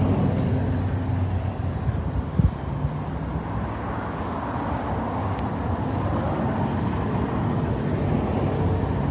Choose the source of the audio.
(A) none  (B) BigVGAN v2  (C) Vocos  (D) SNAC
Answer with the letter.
A